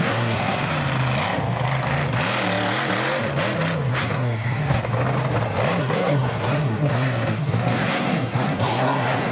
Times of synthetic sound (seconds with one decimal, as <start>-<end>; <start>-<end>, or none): 0.0-0.7; 3.9-4.9; 5.8-9.3